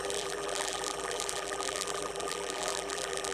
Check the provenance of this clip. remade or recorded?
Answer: remade